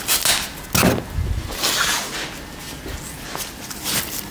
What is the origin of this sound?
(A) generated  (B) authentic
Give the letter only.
B